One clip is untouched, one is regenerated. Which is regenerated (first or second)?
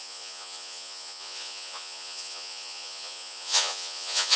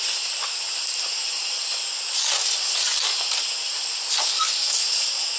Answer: first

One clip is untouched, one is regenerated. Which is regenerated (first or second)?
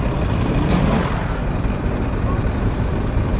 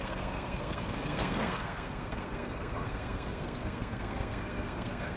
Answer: second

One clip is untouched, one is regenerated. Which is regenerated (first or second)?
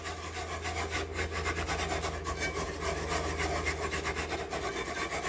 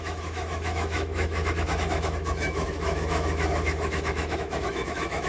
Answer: second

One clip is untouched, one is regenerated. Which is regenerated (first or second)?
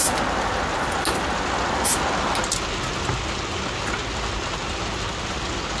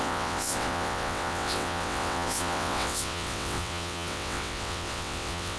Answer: second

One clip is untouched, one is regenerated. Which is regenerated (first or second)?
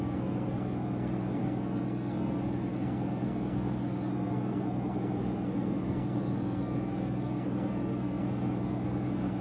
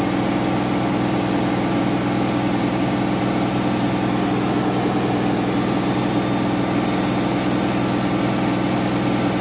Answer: first